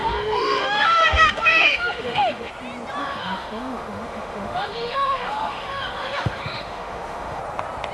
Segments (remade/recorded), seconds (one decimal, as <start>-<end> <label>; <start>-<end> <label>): 0.0-2.5 remade; 2.5-3.0 recorded; 3.0-7.4 remade; 7.4-7.9 recorded